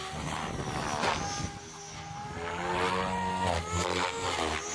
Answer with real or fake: real